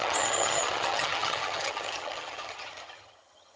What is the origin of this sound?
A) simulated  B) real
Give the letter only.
A